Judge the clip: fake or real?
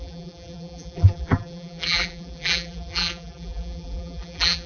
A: fake